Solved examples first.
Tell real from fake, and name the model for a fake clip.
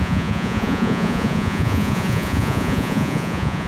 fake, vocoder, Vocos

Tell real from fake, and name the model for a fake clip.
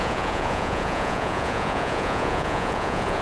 fake, vocoder, Vocos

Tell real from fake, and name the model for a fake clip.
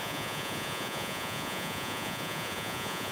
fake, vocoder, Vocos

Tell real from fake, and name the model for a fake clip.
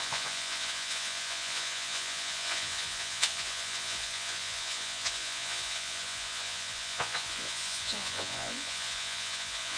fake, vocoder, Vocos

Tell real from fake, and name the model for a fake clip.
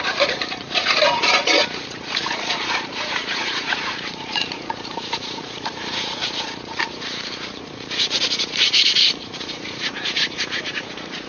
fake, vocoder, Vocos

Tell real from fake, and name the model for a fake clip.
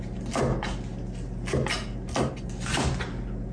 real